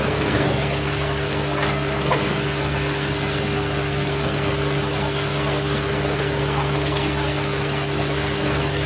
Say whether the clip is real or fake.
fake